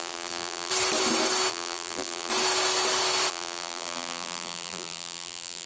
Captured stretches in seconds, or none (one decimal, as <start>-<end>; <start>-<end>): 0.7-1.5; 2.3-3.3